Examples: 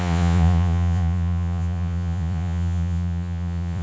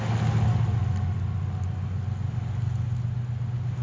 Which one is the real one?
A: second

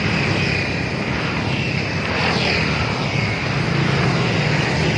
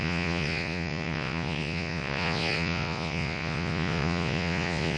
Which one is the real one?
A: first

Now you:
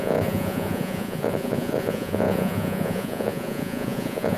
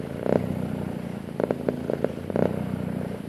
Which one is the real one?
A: second